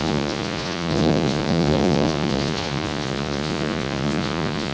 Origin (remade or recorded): remade